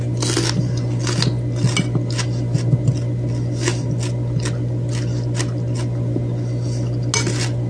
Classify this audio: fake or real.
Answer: real